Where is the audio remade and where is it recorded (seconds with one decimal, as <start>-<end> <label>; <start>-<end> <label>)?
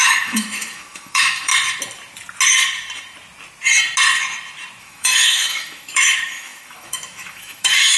0.0-1.5 remade; 1.5-4.8 recorded; 4.8-8.0 remade